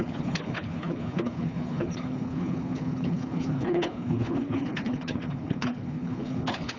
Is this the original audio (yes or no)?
no